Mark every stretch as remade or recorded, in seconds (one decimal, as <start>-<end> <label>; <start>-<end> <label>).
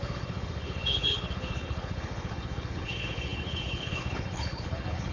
0.0-5.1 remade